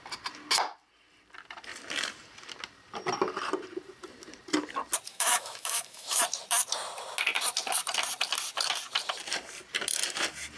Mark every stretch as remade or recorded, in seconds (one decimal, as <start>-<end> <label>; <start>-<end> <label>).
0.0-5.1 recorded; 5.1-6.2 remade; 6.2-10.6 recorded